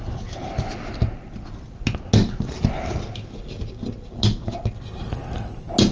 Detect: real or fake real